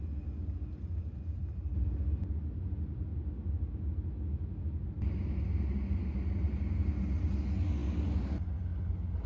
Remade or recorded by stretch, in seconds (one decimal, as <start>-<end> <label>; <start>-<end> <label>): 0.0-9.3 recorded